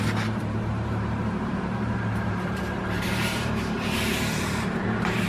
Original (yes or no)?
no